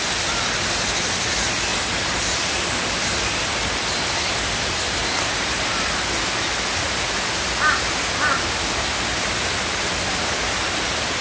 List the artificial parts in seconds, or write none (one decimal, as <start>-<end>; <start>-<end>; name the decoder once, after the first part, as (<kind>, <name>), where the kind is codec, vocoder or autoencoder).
none